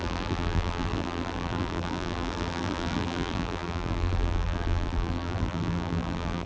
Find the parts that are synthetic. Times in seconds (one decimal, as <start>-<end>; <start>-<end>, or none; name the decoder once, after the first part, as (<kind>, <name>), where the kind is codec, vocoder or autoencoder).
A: 0.0-6.5 (vocoder, BigVGAN v2)